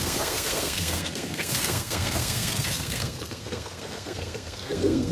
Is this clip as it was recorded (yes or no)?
no